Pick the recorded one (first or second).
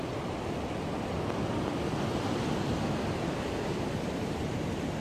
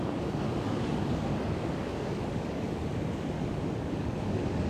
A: first